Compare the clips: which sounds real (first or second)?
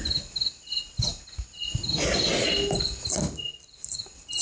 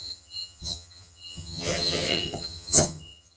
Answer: first